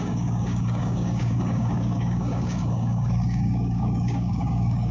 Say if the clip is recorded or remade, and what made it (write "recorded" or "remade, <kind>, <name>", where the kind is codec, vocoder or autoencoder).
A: remade, codec, DAC